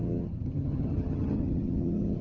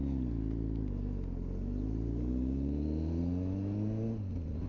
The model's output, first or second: first